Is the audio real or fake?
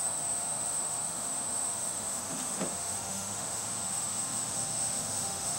fake